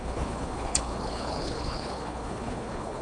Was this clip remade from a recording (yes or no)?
yes